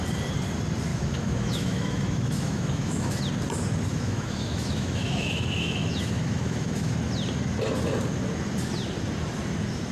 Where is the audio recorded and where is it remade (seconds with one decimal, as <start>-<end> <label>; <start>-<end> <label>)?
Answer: 0.0-0.9 recorded; 0.9-3.2 remade; 3.2-3.9 recorded; 3.9-6.9 remade; 6.9-9.9 recorded